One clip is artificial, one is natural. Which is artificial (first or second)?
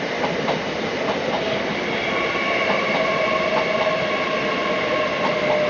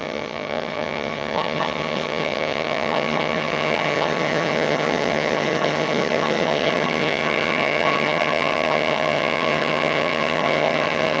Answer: second